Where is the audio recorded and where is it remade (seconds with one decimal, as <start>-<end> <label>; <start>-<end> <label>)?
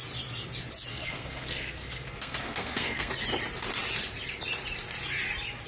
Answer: 0.0-0.9 recorded; 0.9-3.1 remade; 3.1-5.7 recorded